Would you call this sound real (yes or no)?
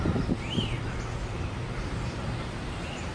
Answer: no